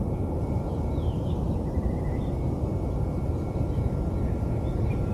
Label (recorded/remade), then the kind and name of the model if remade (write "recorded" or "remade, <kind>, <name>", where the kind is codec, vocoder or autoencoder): recorded